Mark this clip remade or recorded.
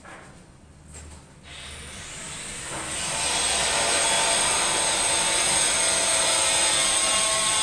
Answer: recorded